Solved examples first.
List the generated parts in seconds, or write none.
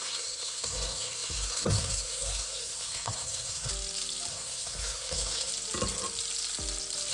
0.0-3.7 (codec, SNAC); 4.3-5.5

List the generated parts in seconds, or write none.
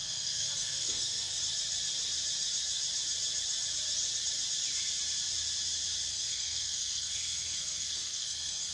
0.0-1.4 (codec, SNAC); 6.1-8.7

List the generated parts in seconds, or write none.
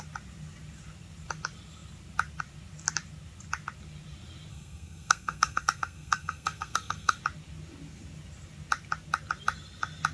4.5-7.2 (codec, SNAC)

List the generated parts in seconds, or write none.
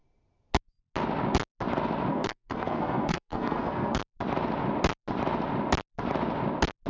2.1-4.0 (codec, SNAC)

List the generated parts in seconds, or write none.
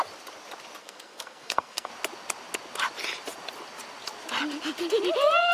0.8-1.9 (codec, SNAC)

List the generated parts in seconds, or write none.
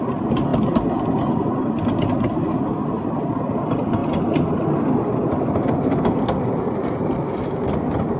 none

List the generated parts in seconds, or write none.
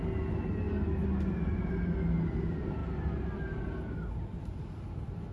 none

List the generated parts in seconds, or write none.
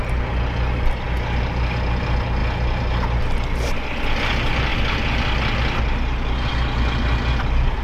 none